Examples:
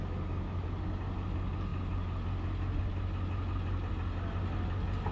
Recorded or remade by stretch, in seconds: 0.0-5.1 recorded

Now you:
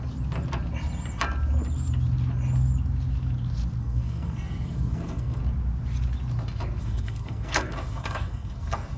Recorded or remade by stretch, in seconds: 0.0-3.8 recorded; 3.8-5.4 remade; 5.4-6.8 recorded; 6.8-9.0 remade

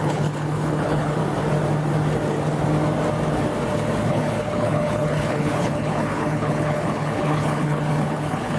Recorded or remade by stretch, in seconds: 0.0-1.2 remade; 1.2-4.1 recorded; 4.1-8.6 remade

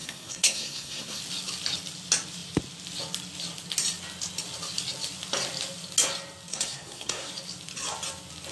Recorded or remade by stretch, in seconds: 0.0-1.2 remade; 1.2-6.5 recorded; 6.5-7.3 remade; 7.3-8.5 recorded

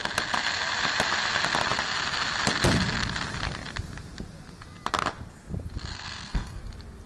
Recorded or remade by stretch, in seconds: 0.0-5.9 recorded; 5.9-6.6 remade; 6.6-7.1 recorded

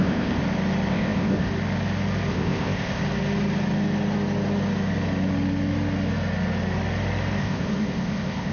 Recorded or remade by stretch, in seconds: 0.0-0.4 remade; 0.4-0.9 recorded; 0.9-1.5 remade; 1.5-2.3 recorded; 2.3-3.0 remade; 3.0-7.4 recorded; 7.4-8.5 remade